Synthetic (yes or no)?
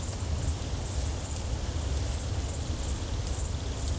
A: no